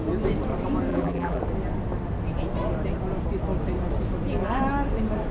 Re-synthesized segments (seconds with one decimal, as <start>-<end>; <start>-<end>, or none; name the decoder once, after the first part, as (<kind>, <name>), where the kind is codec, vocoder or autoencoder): 0.9-1.4 (vocoder, BigVGAN v2)